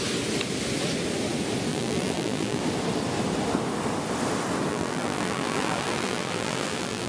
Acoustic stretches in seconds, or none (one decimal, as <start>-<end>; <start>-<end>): 0.0-1.7; 2.6-4.7